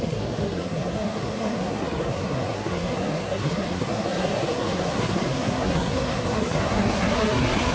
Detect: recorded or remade remade